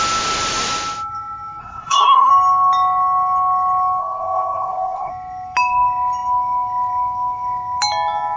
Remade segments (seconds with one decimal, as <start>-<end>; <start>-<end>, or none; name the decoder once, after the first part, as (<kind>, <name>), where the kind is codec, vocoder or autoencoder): 1.6-2.3 (codec, SNAC); 4.0-5.1